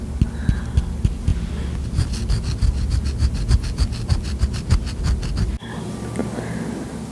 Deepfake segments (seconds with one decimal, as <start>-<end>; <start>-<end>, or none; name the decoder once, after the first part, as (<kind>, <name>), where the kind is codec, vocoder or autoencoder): none